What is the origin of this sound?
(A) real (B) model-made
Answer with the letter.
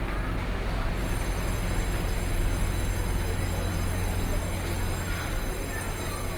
A